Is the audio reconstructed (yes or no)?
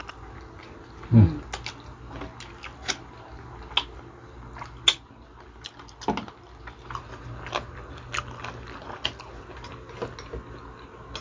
no